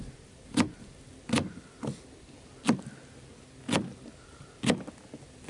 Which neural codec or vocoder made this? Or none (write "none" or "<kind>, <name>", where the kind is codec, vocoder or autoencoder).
none